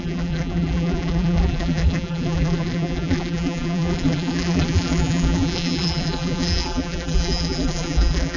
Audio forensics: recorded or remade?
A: remade